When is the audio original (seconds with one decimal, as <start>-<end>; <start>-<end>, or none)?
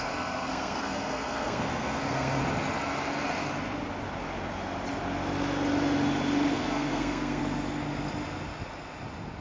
2.4-6.5; 7.4-9.4